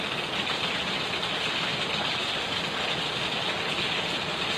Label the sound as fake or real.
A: real